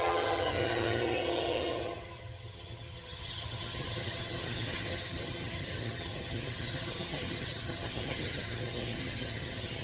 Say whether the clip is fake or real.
fake